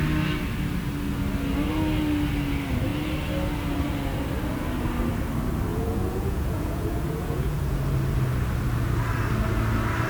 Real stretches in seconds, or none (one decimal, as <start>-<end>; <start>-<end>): 0.0-5.7; 7.8-10.1